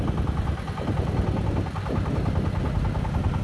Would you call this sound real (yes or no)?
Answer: yes